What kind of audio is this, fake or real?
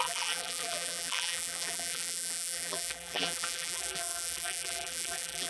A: fake